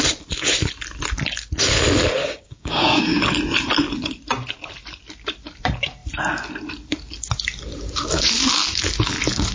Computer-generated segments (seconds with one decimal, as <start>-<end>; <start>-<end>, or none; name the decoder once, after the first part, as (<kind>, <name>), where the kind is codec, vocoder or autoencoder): 2.2-3.2 (codec, DAC)